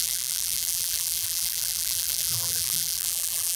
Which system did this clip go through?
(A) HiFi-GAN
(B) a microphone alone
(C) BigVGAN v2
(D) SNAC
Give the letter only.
C